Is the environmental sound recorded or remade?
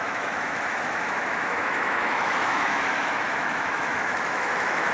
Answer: remade